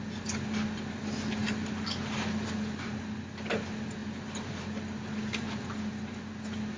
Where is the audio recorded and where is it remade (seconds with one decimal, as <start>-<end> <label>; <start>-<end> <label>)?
0.0-6.8 recorded